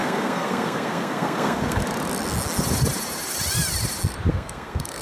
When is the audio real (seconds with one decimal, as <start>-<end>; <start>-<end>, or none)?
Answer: 1.8-4.3

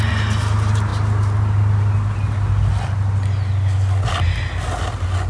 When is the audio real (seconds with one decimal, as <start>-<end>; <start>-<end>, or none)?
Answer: 0.0-5.3

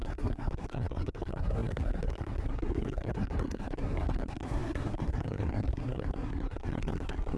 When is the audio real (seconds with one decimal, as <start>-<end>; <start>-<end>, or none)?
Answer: none

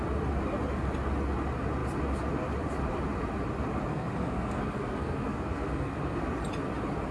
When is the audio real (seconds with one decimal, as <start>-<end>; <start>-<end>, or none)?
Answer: 0.0-3.9; 6.2-7.1

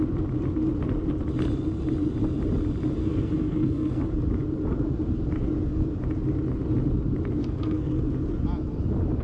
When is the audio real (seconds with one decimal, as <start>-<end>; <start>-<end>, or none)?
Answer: 0.0-3.0; 4.0-7.4; 8.0-9.2

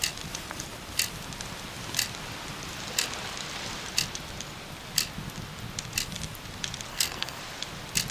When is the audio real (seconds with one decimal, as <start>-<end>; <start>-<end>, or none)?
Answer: 0.0-6.9; 7.4-8.1

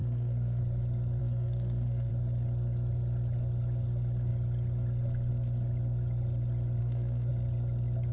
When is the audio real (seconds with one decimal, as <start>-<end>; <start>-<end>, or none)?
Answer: 0.6-1.2; 2.1-6.8; 7.3-8.1

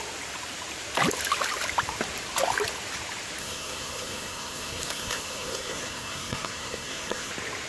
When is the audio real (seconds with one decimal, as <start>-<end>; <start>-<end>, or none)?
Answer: 0.0-3.4; 7.3-7.7